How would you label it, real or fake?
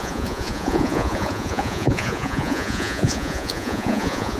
fake